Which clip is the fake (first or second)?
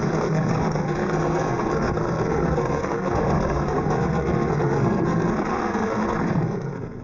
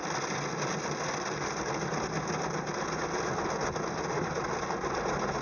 first